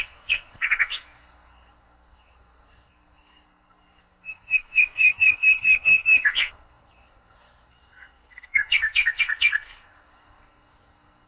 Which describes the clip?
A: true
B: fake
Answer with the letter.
B